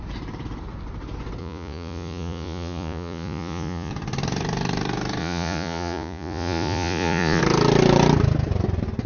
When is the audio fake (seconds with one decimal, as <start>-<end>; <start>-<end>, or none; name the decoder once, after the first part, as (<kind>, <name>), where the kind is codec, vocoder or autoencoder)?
1.4-3.9 (vocoder, Vocos); 5.2-7.4